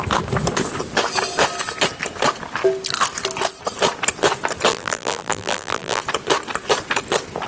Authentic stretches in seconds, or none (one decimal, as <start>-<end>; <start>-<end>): 0.0-4.7; 6.0-7.5